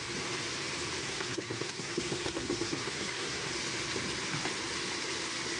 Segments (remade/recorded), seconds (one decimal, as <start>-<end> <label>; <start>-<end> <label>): 0.0-1.0 recorded; 1.0-3.5 remade; 3.5-5.6 recorded